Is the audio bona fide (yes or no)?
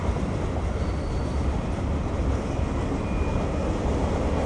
yes